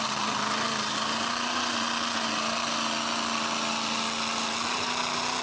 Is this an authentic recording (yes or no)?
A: yes